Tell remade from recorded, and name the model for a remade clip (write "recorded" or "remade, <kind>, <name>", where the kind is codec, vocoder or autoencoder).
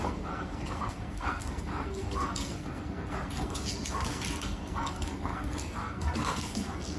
remade, codec, SNAC